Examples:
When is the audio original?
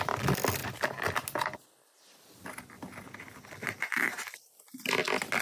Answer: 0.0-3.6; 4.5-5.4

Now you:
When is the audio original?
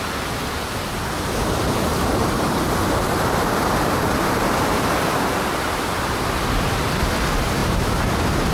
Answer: 0.0-1.9; 6.3-8.5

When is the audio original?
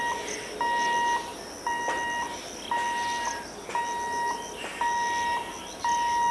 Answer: 0.0-6.3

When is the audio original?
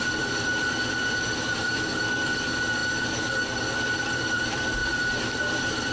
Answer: 2.8-3.8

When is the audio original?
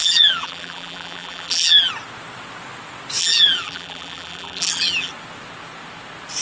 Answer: 1.9-3.2; 5.1-6.4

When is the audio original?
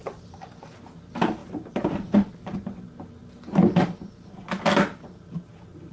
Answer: 0.0-1.4; 2.3-5.9